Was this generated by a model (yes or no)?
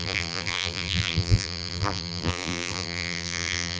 yes